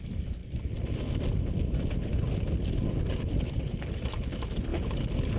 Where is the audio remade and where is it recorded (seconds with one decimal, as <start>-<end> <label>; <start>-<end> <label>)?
0.0-5.4 recorded